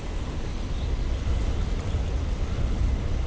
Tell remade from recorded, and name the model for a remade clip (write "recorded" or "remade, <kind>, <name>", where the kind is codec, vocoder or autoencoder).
recorded